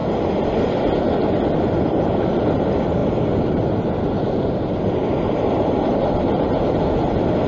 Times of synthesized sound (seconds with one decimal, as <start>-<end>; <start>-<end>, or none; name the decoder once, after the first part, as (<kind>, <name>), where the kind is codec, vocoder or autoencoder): none